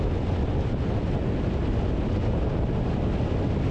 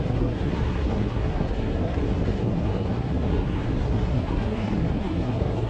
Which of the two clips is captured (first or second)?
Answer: first